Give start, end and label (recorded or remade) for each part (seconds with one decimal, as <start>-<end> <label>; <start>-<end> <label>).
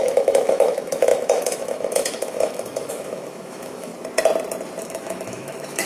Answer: 0.0-3.9 remade; 3.9-4.8 recorded; 4.8-5.9 remade